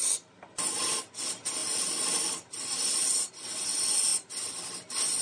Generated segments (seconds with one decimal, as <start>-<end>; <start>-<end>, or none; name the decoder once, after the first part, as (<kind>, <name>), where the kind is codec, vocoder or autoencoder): 1.6-3.3 (vocoder, BigVGAN v2); 4.1-5.2